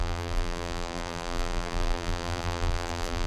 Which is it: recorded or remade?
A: remade